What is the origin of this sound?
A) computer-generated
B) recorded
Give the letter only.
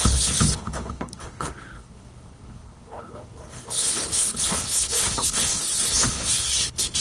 A